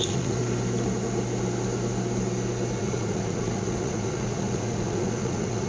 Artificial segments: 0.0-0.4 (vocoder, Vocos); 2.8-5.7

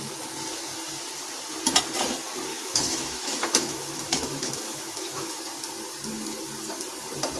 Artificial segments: 2.5-5.4 (autoencoder, DAC-VAE)

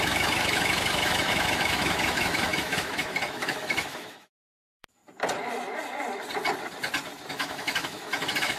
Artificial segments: 0.0-5.0 (autoencoder, DAC-VAE); 7.3-8.6

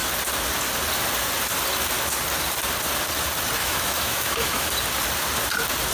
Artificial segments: 3.6-4.7 (autoencoder, DAC-VAE)

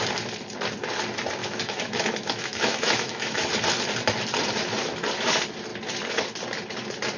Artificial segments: 1.4-3.5 (autoencoder, DAC-VAE)